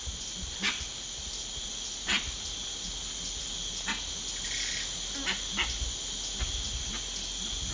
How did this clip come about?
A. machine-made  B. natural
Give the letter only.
B